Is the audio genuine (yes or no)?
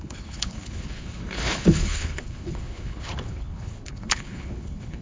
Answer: no